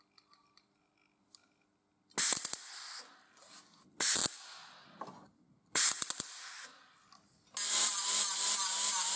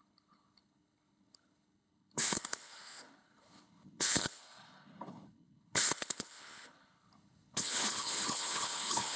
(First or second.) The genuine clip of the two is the first